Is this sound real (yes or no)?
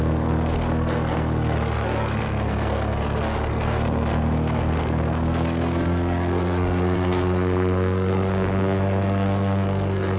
no